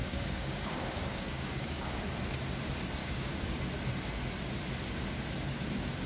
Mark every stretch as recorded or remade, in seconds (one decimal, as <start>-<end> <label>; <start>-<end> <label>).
0.0-2.0 remade; 2.0-3.0 recorded; 3.0-3.6 remade; 3.6-6.1 recorded